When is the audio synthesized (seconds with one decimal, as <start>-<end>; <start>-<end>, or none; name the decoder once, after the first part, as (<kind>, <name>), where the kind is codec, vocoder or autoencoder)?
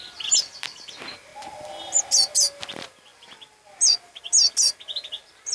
1.3-2.0 (vocoder, BigVGAN v2); 3.1-4.2